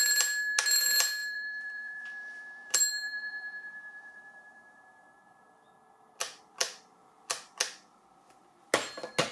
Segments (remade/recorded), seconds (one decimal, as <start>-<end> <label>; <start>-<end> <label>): 0.0-1.2 recorded; 1.2-5.7 remade; 5.7-9.3 recorded